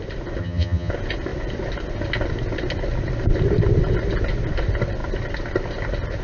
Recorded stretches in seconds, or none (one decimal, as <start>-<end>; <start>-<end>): 0.0-0.4; 0.9-6.2